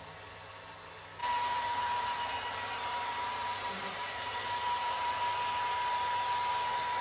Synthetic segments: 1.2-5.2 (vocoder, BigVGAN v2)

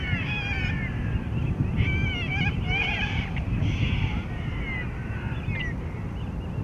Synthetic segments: 2.3-3.2 (vocoder, BigVGAN v2)

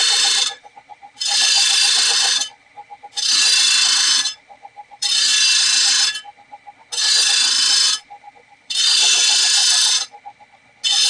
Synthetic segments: 0.0-5.3 (vocoder, BigVGAN v2); 7.0-9.6

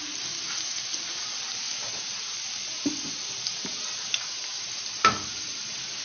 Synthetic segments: 2.3-5.3 (vocoder, BigVGAN v2)

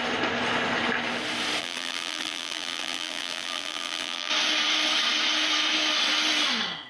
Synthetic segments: 1.6-4.3 (vocoder, BigVGAN v2)